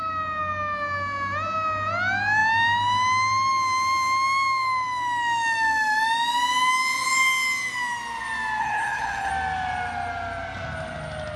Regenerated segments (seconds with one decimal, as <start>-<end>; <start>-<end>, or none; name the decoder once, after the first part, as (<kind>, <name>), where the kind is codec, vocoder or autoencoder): 8.6-9.3 (codec, HILCodec)